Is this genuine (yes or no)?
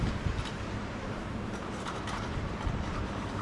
no